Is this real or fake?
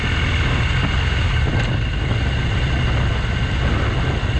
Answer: real